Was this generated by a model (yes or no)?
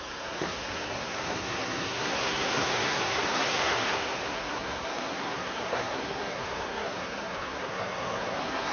yes